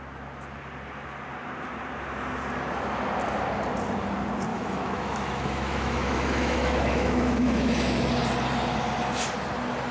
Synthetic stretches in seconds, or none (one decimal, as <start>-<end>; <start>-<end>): 4.5-8.1